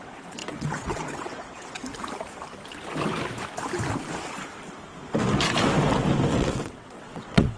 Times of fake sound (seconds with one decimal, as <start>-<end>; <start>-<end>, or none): 0.0-1.8; 6.3-7.6